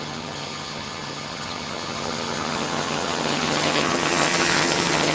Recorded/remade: remade